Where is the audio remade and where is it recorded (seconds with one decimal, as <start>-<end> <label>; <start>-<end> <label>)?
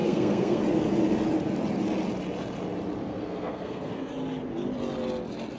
0.0-0.6 remade; 0.6-3.0 recorded; 3.0-4.1 remade; 4.1-5.6 recorded